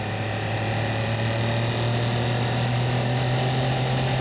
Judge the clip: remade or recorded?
recorded